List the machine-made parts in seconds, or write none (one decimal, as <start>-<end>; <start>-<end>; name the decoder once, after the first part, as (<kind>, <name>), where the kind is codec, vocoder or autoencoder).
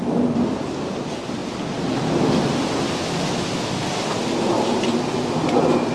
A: none